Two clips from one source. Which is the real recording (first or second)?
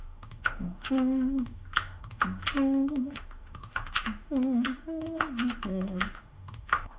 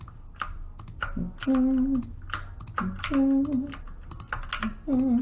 second